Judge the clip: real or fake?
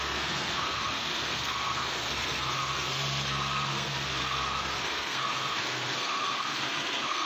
fake